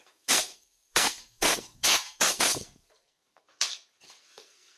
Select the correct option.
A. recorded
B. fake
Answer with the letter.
B